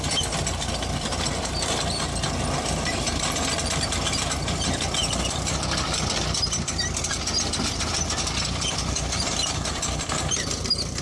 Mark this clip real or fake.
fake